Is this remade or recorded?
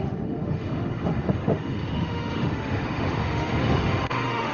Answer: remade